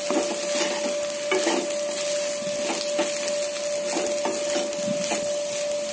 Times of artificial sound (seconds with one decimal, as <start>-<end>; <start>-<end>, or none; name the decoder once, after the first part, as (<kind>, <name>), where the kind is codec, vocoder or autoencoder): none